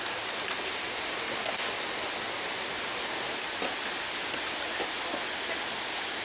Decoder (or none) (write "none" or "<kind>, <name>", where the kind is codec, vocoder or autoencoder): none